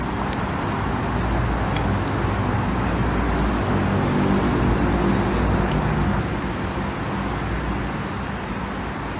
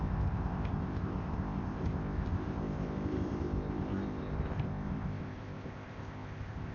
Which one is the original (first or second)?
first